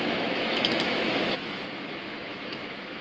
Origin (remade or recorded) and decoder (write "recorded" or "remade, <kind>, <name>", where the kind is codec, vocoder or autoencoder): remade, autoencoder, DAC-VAE